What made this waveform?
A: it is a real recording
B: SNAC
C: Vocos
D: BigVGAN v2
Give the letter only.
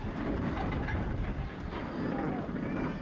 A